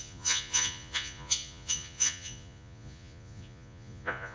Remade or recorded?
remade